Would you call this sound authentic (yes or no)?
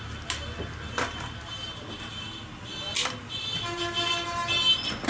yes